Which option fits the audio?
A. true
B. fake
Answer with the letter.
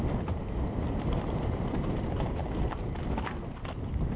A